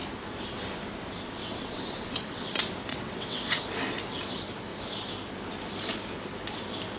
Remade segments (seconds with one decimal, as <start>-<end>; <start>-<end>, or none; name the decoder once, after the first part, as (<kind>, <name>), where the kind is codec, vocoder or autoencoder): 1.4-2.5 (vocoder, WaveNeXt); 2.9-3.6